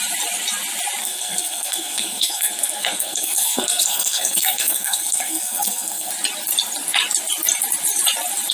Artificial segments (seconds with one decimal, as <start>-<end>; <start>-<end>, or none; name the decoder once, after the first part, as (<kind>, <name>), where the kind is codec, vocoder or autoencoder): 1.0-6.1 (codec, SNAC)